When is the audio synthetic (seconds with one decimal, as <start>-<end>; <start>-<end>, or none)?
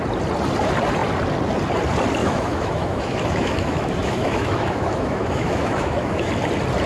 2.2-6.3